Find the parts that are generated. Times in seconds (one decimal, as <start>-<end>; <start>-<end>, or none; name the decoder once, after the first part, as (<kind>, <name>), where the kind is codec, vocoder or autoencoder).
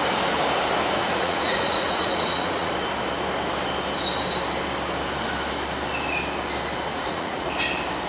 1.0-2.7 (vocoder, Vocos); 6.9-7.5